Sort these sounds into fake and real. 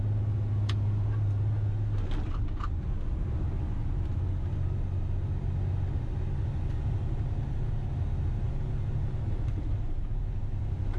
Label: real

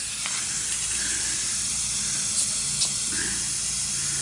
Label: real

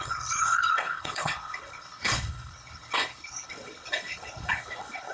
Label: fake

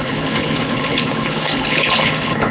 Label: fake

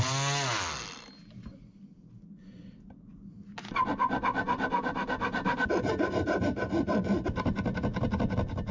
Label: real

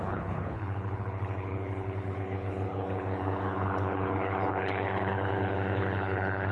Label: fake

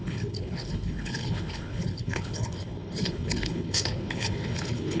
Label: fake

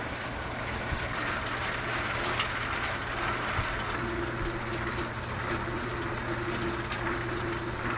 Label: real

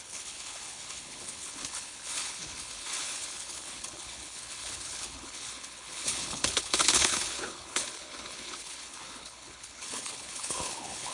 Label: fake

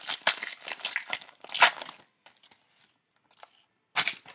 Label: real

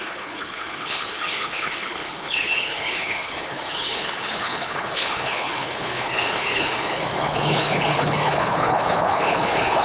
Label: fake